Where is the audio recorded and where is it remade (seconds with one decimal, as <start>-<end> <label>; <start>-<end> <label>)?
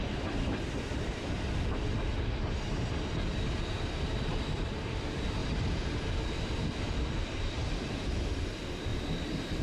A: 0.0-9.6 remade